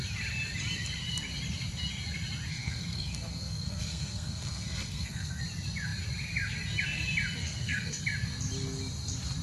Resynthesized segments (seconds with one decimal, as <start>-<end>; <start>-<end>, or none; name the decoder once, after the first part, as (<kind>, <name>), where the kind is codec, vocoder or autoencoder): 2.5-5.4 (codec, SNAC); 7.4-8.0